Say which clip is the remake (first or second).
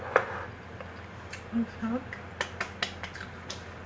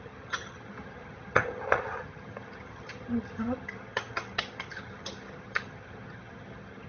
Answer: second